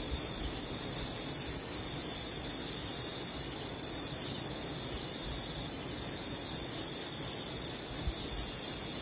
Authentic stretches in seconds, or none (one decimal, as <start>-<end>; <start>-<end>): 0.0-9.0